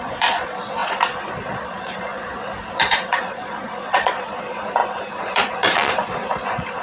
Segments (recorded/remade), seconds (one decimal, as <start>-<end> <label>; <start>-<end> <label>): 0.0-6.8 remade